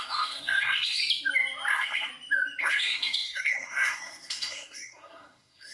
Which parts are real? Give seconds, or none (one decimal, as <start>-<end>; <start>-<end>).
1.0-1.7; 2.1-2.6